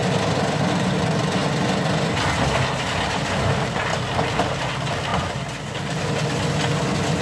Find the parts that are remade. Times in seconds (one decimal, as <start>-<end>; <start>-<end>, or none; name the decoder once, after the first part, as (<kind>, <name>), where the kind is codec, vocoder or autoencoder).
none